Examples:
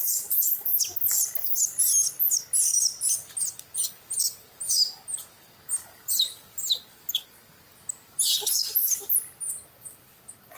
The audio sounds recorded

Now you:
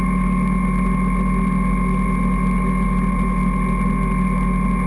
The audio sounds recorded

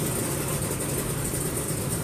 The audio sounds recorded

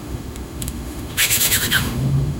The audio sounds remade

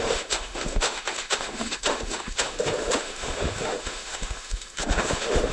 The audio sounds remade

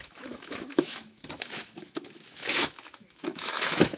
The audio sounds remade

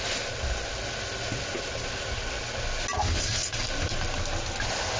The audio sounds recorded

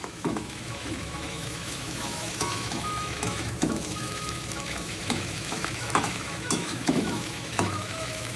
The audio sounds remade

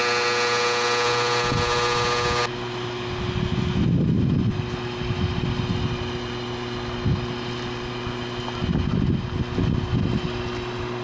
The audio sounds recorded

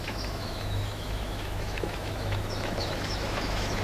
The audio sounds remade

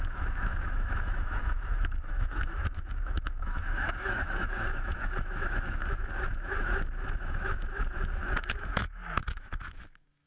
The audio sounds remade